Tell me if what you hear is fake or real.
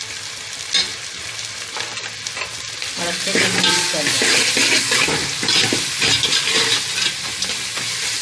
real